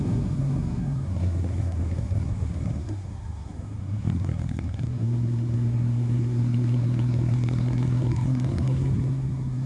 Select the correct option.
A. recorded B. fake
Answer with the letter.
B